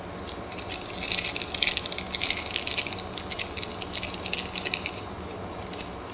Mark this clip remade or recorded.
recorded